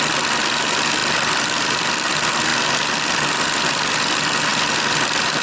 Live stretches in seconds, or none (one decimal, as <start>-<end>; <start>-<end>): 0.0-1.0; 2.1-5.4